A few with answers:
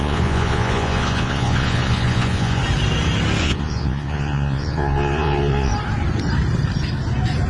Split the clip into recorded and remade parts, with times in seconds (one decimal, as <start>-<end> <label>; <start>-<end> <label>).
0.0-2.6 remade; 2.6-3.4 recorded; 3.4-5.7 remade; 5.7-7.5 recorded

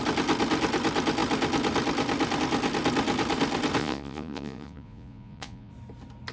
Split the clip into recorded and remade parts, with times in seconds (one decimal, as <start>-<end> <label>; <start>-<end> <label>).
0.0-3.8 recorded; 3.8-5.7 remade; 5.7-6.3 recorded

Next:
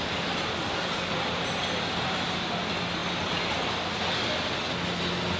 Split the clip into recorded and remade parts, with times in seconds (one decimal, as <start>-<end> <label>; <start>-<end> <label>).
0.0-5.4 recorded

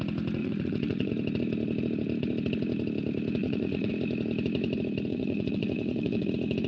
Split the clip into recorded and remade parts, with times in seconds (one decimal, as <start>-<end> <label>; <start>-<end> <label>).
0.0-0.4 recorded; 0.4-1.1 remade; 1.1-3.4 recorded; 3.4-3.9 remade; 3.9-5.1 recorded; 5.1-6.3 remade; 6.3-6.7 recorded